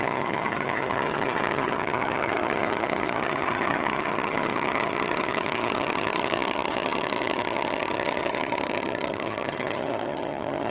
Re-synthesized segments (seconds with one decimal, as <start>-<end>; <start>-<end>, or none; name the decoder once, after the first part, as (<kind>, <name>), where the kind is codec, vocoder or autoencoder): 0.0-10.7 (vocoder, HiFi-GAN)